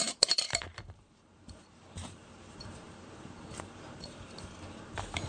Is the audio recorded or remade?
remade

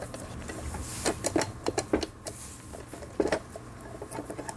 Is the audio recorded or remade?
recorded